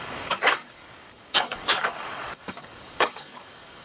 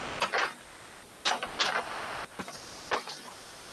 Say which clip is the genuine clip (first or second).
second